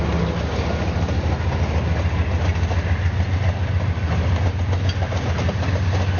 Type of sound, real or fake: real